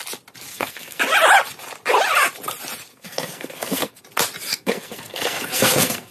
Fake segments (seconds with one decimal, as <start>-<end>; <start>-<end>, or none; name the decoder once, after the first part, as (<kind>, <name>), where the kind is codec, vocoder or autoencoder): 0.5-1.0 (codec, SNAC); 2.9-4.0; 4.5-6.1